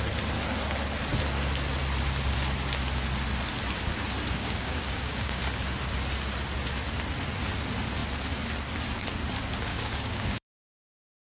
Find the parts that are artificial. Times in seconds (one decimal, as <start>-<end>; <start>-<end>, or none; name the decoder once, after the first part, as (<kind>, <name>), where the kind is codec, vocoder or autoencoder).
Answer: 4.4-5.4 (codec, DAC); 9.7-11.3